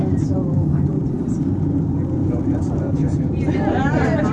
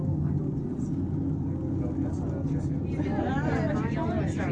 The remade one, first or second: first